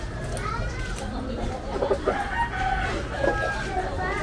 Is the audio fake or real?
real